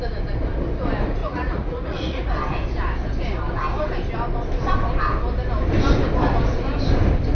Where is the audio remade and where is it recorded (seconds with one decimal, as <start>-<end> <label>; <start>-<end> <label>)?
0.0-1.2 recorded; 1.2-2.4 remade; 2.4-7.3 recorded